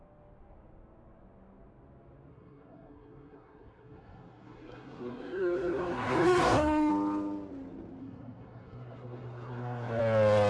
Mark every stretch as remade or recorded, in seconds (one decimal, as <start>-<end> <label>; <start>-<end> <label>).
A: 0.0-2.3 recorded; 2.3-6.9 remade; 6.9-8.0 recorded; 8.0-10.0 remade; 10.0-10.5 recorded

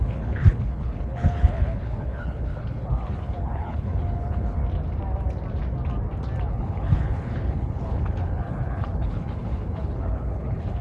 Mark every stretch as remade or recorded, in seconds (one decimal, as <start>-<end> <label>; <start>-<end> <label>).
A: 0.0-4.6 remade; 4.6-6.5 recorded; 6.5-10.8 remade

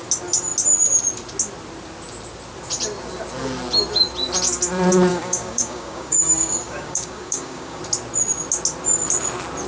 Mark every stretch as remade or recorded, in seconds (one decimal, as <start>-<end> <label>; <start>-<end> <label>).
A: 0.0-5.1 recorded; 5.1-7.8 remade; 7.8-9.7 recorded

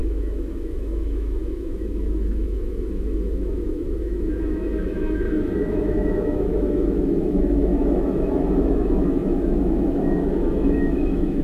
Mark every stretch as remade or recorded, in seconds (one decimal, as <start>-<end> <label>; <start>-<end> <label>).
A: 0.0-11.4 remade

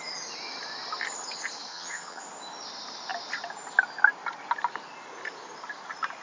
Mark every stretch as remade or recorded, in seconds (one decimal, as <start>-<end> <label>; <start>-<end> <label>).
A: 0.0-1.7 recorded; 1.7-2.2 remade; 2.2-6.2 recorded

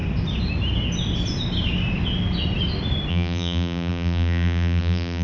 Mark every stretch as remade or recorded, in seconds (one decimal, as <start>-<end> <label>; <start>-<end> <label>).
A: 0.0-3.1 recorded; 3.1-5.2 remade

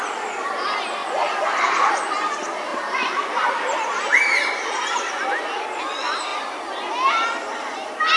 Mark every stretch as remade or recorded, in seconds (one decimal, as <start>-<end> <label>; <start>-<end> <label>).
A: 0.0-2.7 remade; 2.7-3.5 recorded; 3.5-4.1 remade; 4.1-5.1 recorded; 5.1-8.2 remade